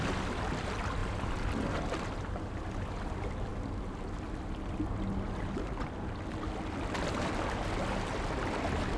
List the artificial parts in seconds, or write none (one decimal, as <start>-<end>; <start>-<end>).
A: none